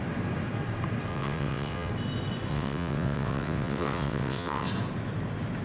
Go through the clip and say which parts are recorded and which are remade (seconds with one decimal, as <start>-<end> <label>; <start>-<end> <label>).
0.0-1.1 recorded; 1.1-1.9 remade; 1.9-2.5 recorded; 2.5-4.7 remade; 4.7-5.6 recorded

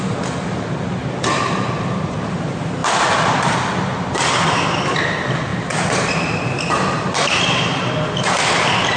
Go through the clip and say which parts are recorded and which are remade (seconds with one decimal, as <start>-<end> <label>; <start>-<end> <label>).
0.0-1.0 recorded; 1.0-2.3 remade; 2.3-2.8 recorded; 2.8-3.5 remade; 3.5-9.0 recorded

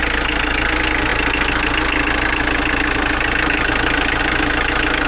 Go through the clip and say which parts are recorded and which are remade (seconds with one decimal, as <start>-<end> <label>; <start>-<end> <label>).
0.0-5.1 recorded

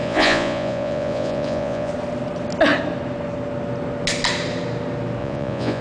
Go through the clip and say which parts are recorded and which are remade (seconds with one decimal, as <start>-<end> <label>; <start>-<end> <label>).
0.0-1.9 remade; 1.9-5.2 recorded; 5.2-5.8 remade

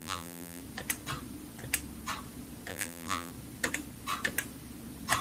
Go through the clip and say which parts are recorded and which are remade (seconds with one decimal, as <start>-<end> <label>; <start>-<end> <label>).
0.0-0.6 remade; 0.6-2.7 recorded; 2.7-3.3 remade; 3.3-5.2 recorded

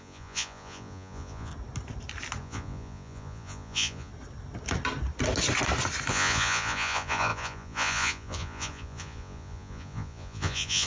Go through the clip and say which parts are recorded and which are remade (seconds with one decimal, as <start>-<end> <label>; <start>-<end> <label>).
0.0-1.5 remade; 1.5-2.4 recorded; 2.4-4.1 remade; 4.1-6.1 recorded; 6.1-10.9 remade

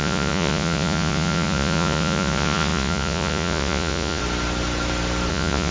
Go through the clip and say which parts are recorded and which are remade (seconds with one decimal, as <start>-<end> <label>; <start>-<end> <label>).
0.0-4.2 remade; 4.2-5.3 recorded; 5.3-5.7 remade